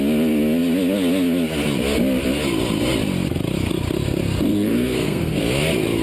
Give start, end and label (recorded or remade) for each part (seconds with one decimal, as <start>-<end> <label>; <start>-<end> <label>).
0.0-4.5 recorded; 4.5-5.4 remade; 5.4-6.0 recorded